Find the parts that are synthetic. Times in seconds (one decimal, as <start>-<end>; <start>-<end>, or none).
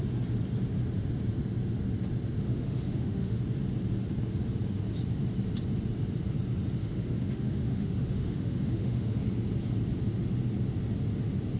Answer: 2.5-3.4; 6.8-9.2